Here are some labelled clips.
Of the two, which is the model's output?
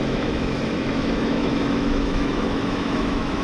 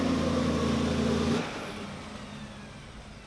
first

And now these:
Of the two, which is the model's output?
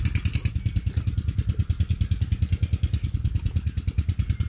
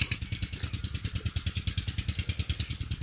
second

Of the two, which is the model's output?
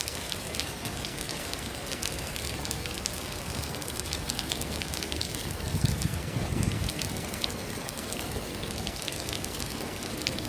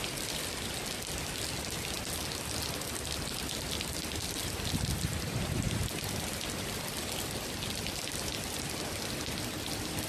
first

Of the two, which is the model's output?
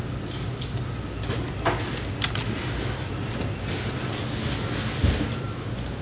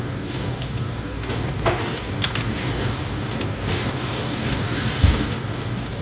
second